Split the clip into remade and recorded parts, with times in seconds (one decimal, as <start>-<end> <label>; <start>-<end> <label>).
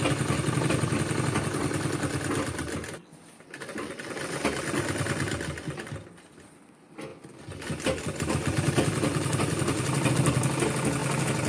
0.0-7.1 recorded; 7.1-10.1 remade; 10.1-11.5 recorded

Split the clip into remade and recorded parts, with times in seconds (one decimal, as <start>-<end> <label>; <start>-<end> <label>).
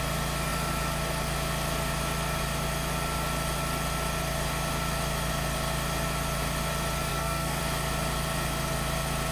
0.0-7.1 recorded; 7.1-7.6 remade; 7.6-9.3 recorded